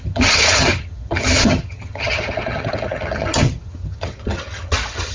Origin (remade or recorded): remade